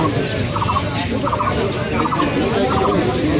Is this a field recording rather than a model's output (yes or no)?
yes